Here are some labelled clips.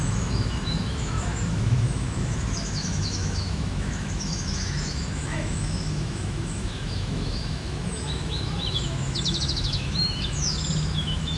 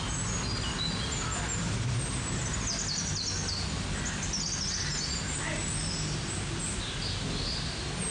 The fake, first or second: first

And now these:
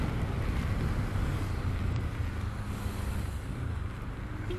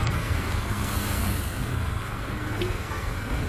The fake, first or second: second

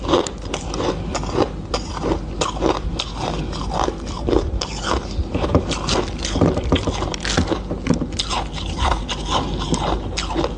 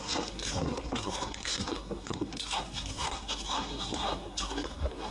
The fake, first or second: second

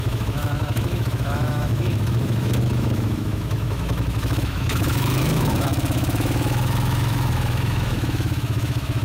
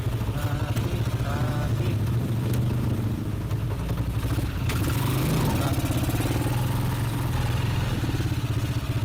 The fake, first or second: first